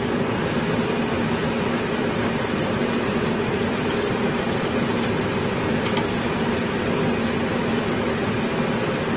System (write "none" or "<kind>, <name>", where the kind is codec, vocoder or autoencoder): none